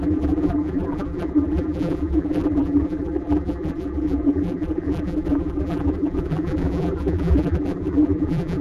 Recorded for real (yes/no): no